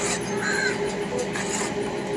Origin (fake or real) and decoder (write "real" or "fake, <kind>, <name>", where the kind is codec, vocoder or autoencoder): real